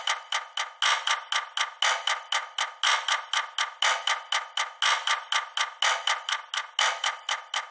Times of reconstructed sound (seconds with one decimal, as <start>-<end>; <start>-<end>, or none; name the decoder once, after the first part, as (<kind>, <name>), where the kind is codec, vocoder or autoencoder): none